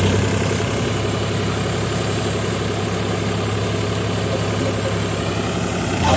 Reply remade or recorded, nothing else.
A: recorded